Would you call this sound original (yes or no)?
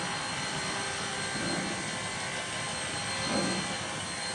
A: yes